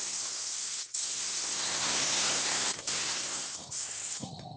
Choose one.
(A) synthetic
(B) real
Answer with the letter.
A